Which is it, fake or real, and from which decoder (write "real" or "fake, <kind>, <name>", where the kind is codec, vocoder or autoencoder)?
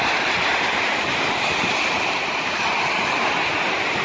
real